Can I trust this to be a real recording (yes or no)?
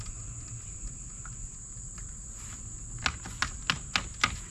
yes